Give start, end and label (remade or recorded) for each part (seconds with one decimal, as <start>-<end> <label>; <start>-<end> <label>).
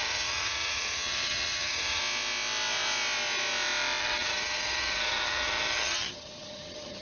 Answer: 0.0-2.0 remade; 2.0-4.0 recorded; 4.0-7.0 remade